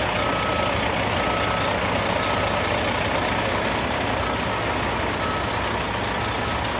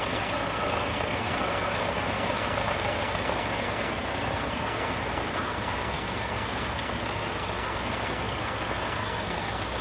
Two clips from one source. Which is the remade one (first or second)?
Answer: second